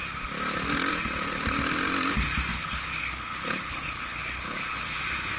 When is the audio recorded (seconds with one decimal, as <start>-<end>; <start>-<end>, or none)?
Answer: 0.0-2.5; 5.0-5.4